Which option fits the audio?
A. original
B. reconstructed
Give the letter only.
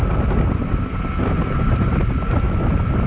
A